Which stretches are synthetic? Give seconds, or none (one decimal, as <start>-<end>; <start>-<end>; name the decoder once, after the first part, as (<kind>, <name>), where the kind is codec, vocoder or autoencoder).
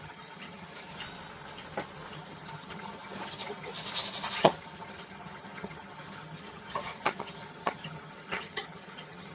0.0-0.9 (vocoder, HiFi-GAN); 2.1-3.7; 4.3-9.3